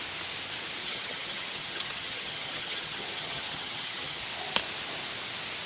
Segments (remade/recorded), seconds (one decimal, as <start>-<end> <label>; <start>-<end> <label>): 0.0-0.8 recorded; 0.8-4.2 remade; 4.2-5.7 recorded

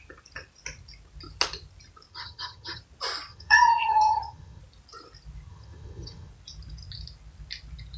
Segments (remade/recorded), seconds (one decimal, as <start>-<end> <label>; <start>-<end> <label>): 0.0-2.1 recorded; 2.1-2.8 remade; 2.8-3.3 recorded; 3.3-4.6 remade; 4.6-5.5 recorded; 5.5-6.3 remade; 6.3-8.0 recorded